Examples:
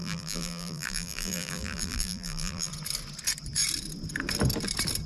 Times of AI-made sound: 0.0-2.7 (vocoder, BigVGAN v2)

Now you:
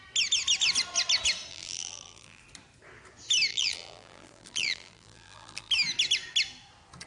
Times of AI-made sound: 1.5-2.4 (vocoder, BigVGAN v2); 3.5-5.7

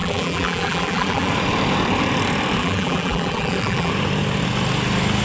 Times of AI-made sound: 0.0-1.3 (vocoder, BigVGAN v2); 2.6-3.9

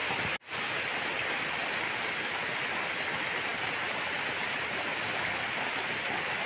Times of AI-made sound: none

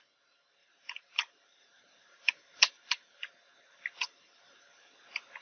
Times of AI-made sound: 0.6-3.3 (vocoder, BigVGAN v2); 4.0-4.9